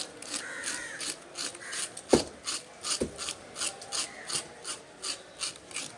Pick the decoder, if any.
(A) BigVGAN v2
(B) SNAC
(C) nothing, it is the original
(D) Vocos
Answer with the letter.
C